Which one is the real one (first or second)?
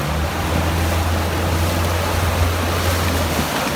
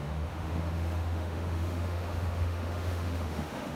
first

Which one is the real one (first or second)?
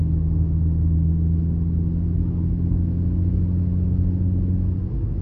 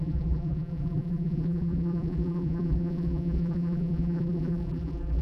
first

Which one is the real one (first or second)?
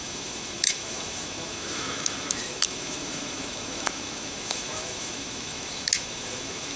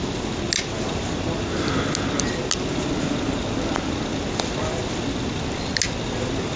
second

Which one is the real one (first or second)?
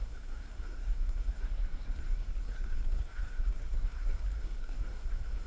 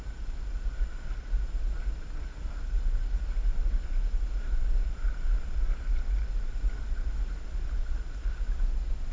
second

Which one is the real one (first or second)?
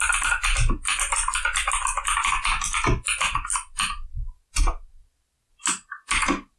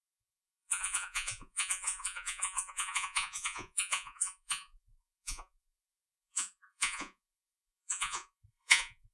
first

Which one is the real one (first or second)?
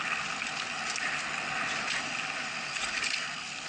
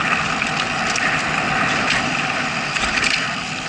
first